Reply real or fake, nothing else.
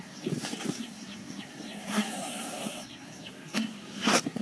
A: fake